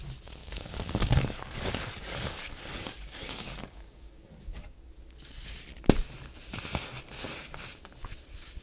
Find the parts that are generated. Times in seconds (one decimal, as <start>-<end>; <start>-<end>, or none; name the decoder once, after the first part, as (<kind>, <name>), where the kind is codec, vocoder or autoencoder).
0.4-4.9 (codec, DAC)

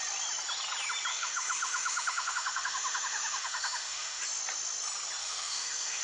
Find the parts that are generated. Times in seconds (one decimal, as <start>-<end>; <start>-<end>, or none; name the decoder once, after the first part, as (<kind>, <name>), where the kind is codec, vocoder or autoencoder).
1.1-4.2 (autoencoder, DAC-VAE); 5.2-6.0

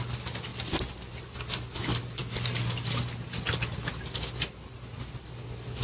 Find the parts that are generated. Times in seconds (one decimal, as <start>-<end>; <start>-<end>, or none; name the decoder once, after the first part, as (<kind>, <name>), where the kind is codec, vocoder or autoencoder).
none

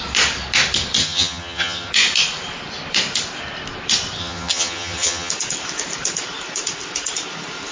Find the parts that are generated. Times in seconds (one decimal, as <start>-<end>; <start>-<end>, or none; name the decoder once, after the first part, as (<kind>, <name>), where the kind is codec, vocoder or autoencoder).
1.0-1.9 (vocoder, HiFi-GAN); 4.2-5.3

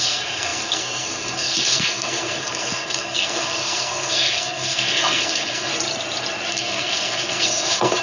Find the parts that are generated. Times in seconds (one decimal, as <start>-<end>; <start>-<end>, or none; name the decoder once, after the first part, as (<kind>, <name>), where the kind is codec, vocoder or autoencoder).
0.0-5.7 (codec, SNAC); 6.5-8.0

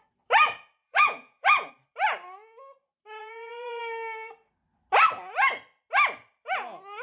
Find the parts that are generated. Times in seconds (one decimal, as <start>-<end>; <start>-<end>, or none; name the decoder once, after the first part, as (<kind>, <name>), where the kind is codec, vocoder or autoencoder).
0.8-1.7 (vocoder, Vocos); 3.2-3.8

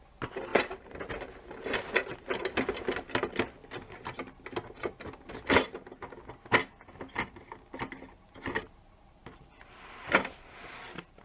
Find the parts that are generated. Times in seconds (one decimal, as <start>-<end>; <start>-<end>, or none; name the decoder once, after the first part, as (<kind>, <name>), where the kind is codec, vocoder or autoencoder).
none